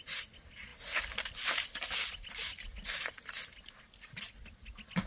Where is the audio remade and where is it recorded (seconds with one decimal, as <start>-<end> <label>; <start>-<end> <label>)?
0.0-5.1 recorded

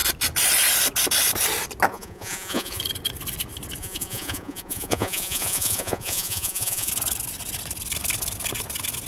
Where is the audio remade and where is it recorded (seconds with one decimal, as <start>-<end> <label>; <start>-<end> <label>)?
0.0-1.9 recorded; 1.9-2.8 remade; 2.8-3.8 recorded; 3.8-6.9 remade; 6.9-9.1 recorded

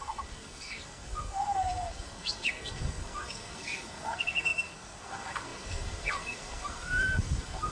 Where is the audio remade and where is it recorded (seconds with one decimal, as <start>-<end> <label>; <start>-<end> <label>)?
0.0-7.7 remade

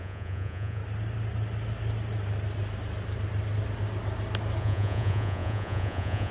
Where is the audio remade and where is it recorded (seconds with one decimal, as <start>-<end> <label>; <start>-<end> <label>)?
0.0-0.8 remade; 0.8-4.6 recorded; 4.6-6.3 remade

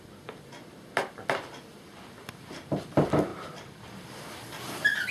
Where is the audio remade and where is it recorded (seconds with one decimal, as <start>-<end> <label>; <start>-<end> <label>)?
0.0-3.3 recorded; 3.3-4.3 remade; 4.3-5.1 recorded